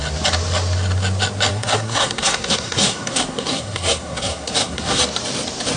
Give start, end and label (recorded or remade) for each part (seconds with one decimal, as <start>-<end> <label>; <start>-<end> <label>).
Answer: 0.0-1.5 recorded; 1.5-5.0 remade; 5.0-5.8 recorded

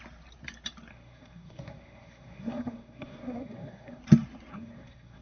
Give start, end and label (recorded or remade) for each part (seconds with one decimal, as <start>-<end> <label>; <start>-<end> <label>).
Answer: 0.0-0.9 recorded; 0.9-4.0 remade; 4.0-4.5 recorded; 4.5-5.2 remade

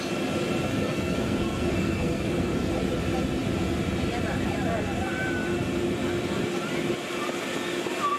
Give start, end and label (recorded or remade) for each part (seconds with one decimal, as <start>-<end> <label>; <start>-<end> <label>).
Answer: 0.0-0.7 recorded; 0.7-2.7 remade; 2.7-8.2 recorded

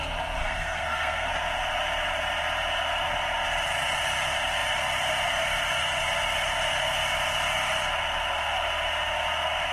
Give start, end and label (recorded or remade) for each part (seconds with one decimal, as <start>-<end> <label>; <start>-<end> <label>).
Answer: 0.0-0.4 recorded; 0.4-1.3 remade; 1.3-9.7 recorded

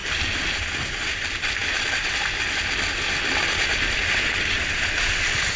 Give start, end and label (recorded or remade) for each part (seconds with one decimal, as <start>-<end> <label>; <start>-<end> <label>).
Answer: 0.0-5.6 recorded

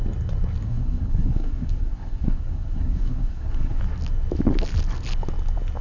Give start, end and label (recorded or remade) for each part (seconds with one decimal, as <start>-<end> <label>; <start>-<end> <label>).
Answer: 0.0-0.6 recorded; 0.6-3.8 remade; 3.8-5.8 recorded

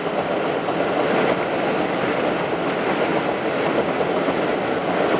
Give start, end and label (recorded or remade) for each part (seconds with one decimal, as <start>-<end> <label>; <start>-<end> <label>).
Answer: 0.0-5.2 recorded

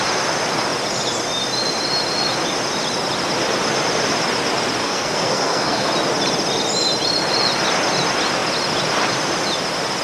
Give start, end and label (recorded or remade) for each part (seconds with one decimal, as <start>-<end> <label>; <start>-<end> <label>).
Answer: 0.0-4.8 recorded; 4.8-5.9 remade; 5.9-10.0 recorded